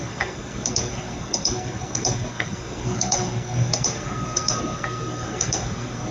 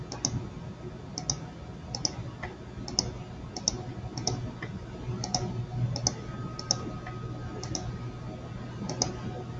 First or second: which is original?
second